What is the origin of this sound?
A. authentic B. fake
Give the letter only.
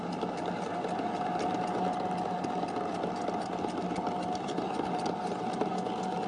A